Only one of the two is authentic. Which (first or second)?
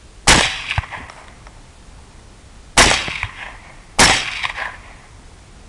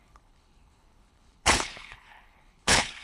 first